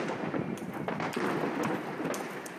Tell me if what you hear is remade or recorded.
recorded